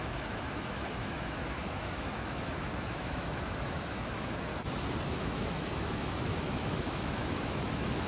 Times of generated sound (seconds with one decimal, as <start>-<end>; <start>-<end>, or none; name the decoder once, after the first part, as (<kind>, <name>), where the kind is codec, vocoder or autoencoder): 0.0-4.5 (autoencoder, DAC-VAE); 5.1-8.1